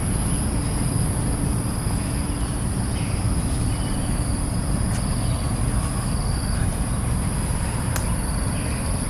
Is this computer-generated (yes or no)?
no